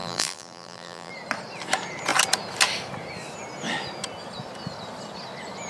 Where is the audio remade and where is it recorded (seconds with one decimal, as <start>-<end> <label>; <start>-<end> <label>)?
0.0-1.1 remade; 1.1-5.7 recorded